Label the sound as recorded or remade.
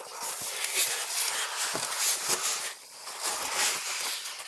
recorded